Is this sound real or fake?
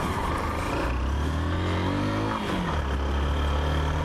real